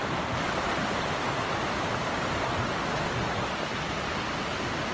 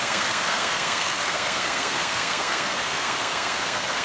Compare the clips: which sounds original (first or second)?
first